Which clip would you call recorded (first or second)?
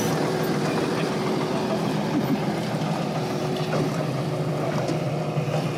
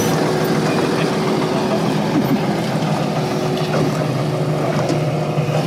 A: second